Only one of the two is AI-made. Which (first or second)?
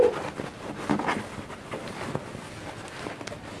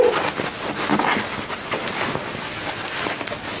first